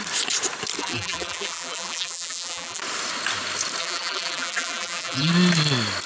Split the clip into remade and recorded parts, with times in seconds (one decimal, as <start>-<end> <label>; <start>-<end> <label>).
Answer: 0.0-0.8 recorded; 0.8-2.8 remade; 2.8-3.8 recorded; 3.8-5.3 remade; 5.3-6.1 recorded